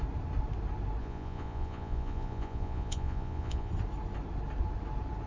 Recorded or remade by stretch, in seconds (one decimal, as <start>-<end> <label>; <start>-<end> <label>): 0.0-1.0 recorded; 1.0-3.7 remade; 3.7-5.3 recorded